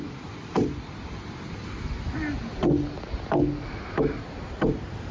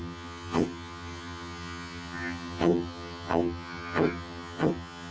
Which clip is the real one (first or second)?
first